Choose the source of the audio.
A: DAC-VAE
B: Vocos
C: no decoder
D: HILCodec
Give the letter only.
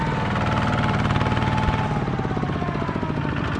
C